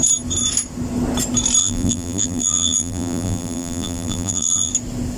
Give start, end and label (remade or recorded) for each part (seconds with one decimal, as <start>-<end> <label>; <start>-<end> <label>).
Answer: 0.0-1.6 recorded; 1.6-4.7 remade; 4.7-5.2 recorded